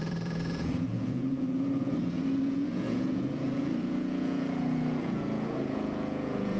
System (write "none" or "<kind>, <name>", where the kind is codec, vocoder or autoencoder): vocoder, Vocos